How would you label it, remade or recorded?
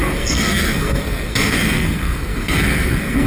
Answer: remade